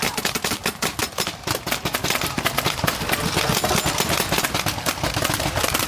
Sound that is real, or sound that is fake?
real